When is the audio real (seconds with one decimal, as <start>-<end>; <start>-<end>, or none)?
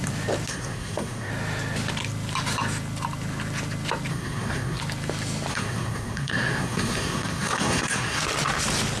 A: 0.0-0.5; 1.3-4.1; 4.8-5.5; 8.2-9.0